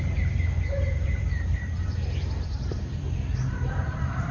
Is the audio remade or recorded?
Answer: remade